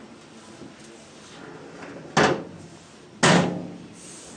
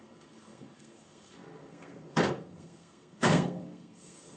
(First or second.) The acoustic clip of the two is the first